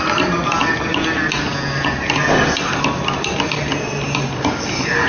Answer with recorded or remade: recorded